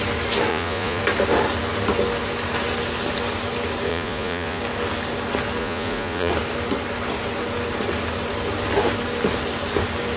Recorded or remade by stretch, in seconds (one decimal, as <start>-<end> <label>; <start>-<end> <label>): 0.0-0.5 recorded; 0.5-1.0 remade; 1.0-3.9 recorded; 3.9-4.6 remade; 4.6-5.6 recorded; 5.6-6.3 remade; 6.3-10.2 recorded